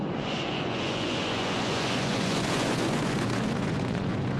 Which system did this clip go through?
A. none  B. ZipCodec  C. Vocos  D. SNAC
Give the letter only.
C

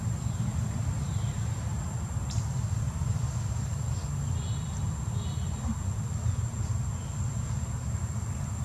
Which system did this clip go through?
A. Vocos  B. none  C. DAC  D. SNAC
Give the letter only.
B